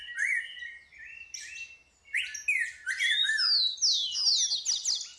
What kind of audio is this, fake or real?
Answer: real